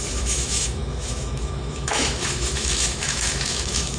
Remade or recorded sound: remade